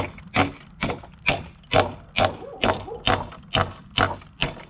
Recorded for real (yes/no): yes